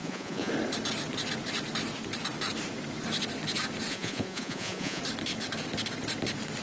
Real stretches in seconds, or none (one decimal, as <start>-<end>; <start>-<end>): 0.5-3.9; 5.0-6.6